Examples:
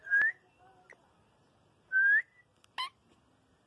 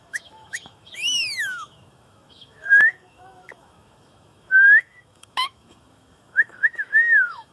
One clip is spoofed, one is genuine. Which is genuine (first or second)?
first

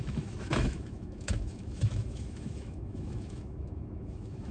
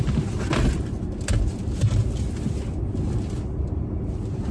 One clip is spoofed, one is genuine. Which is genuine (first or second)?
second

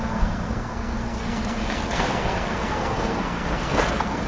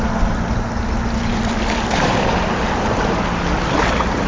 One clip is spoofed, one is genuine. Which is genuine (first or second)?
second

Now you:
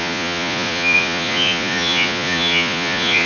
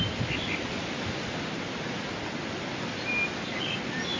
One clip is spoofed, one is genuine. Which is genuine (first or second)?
second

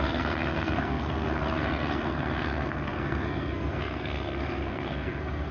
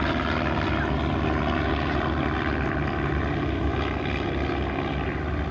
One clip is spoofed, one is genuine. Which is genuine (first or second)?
second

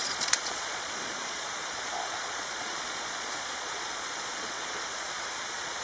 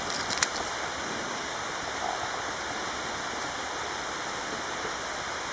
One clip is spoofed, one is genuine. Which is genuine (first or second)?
second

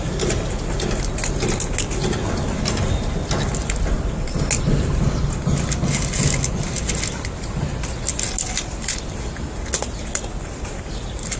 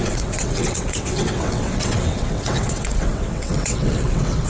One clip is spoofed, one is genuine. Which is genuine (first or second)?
first